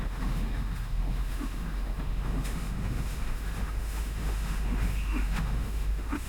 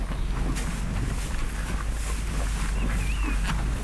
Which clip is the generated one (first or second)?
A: first